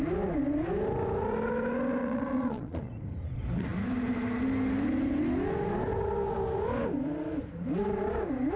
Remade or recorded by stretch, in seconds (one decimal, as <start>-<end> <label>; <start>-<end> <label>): 0.0-2.0 recorded; 2.0-2.9 remade; 2.9-8.6 recorded